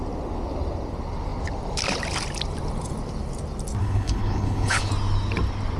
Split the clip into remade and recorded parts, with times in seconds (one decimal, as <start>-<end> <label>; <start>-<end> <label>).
0.0-3.8 recorded; 3.8-4.9 remade; 4.9-5.8 recorded